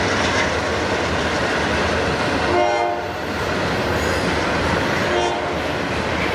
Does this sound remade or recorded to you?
recorded